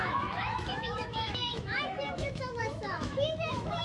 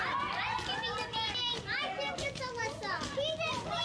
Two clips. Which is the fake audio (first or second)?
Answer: first